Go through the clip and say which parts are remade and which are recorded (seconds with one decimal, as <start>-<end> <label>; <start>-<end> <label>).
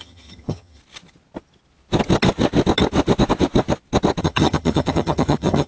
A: 0.0-0.8 remade; 0.8-4.2 recorded; 4.2-5.7 remade